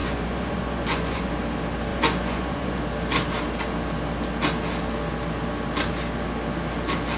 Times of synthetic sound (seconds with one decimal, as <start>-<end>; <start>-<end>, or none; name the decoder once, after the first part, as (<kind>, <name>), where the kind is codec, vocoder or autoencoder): 0.0-1.3 (vocoder, Vocos); 1.9-2.8